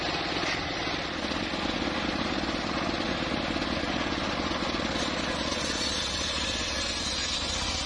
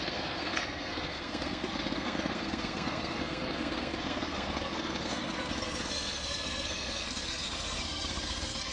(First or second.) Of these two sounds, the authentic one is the first